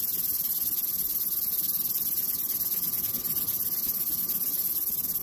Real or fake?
real